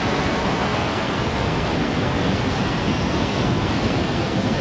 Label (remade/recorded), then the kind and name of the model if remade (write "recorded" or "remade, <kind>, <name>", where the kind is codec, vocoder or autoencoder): remade, codec, SNAC